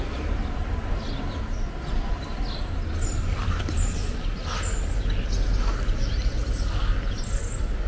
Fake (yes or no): no